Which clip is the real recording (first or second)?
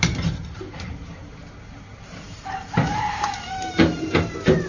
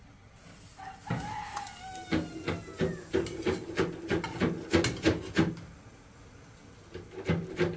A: second